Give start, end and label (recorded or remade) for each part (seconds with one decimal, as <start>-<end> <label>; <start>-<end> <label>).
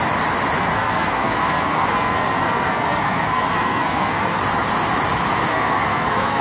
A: 0.0-0.6 recorded; 0.6-4.4 remade; 4.4-5.5 recorded; 5.5-6.4 remade